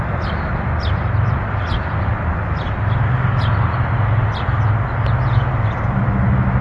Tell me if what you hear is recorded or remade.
recorded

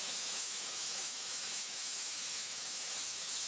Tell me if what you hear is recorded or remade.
remade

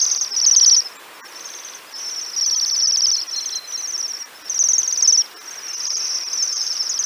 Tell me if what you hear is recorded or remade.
recorded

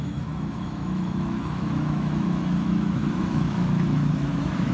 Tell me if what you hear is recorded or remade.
remade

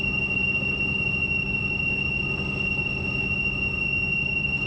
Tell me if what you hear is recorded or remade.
recorded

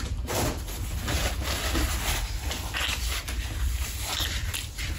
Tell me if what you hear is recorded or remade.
recorded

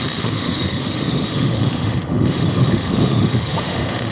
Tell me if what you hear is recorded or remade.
remade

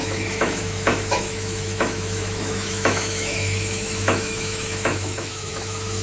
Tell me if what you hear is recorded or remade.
remade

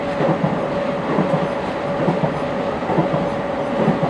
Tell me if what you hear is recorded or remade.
recorded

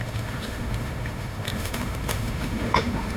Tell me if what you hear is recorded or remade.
remade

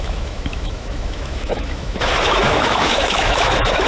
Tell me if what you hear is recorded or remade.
remade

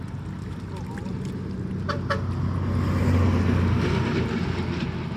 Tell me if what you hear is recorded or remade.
recorded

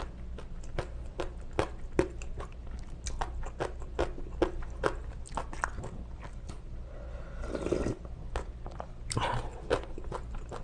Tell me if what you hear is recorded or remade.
recorded